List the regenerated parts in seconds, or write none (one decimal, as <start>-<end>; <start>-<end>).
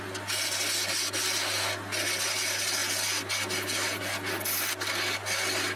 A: none